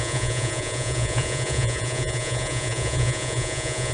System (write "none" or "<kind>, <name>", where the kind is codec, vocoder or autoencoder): vocoder, Vocos